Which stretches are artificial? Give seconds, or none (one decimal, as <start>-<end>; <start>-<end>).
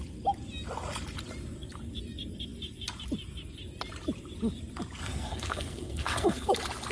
5.0-6.5